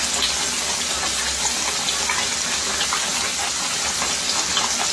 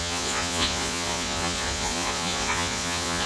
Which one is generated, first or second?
second